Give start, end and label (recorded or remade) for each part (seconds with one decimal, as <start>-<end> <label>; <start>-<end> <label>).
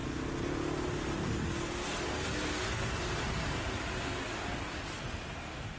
0.0-5.8 recorded